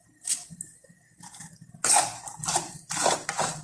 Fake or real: real